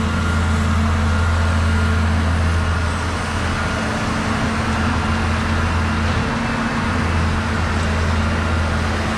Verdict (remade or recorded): recorded